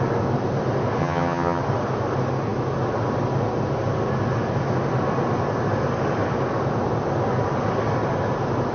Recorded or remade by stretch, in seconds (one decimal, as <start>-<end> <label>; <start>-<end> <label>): 0.0-1.0 recorded; 1.0-1.6 remade; 1.6-8.7 recorded